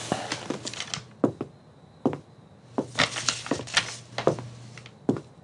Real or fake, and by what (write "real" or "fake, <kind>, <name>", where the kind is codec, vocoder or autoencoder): real